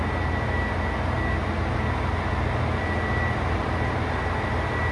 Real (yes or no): yes